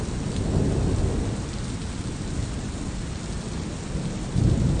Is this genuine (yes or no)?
yes